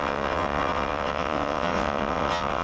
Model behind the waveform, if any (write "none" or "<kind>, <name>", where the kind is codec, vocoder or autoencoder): vocoder, WaveNeXt